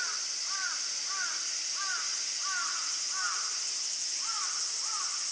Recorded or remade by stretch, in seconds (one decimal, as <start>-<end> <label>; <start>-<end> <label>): 0.0-5.3 recorded